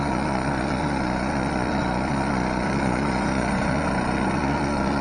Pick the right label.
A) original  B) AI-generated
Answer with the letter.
B